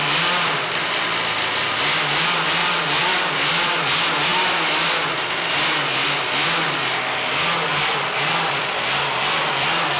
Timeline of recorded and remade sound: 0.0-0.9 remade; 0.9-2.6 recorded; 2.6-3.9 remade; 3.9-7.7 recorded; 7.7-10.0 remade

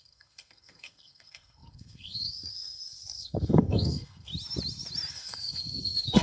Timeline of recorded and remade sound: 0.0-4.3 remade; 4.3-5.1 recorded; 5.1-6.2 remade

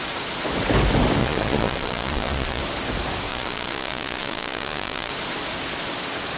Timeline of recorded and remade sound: 0.0-1.2 recorded; 1.2-2.6 remade; 2.6-3.3 recorded; 3.3-5.1 remade; 5.1-6.4 recorded

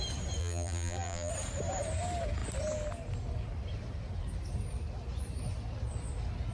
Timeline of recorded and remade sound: 0.0-0.4 recorded; 0.4-1.3 remade; 1.3-6.5 recorded

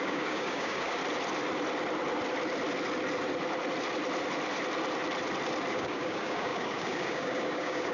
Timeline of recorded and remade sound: 0.0-1.0 remade; 1.0-5.7 recorded; 5.7-7.9 remade

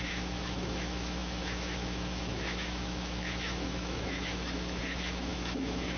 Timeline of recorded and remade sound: 0.0-6.0 remade

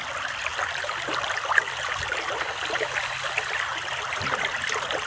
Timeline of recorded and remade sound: 0.0-0.5 recorded; 0.5-2.2 remade; 2.2-3.7 recorded; 3.7-4.6 remade; 4.6-5.1 recorded

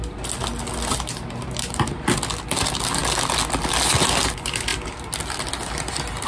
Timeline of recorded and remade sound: 0.0-0.9 recorded; 0.9-2.0 remade; 2.0-6.3 recorded